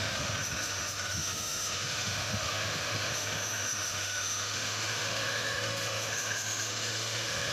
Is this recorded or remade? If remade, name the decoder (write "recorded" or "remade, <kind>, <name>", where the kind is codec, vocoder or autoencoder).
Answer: remade, autoencoder, DAC-VAE